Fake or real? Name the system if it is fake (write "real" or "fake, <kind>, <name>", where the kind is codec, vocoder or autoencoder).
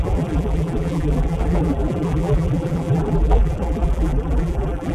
fake, vocoder, BigVGAN v2